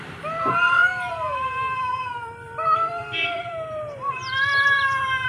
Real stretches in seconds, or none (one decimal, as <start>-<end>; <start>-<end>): none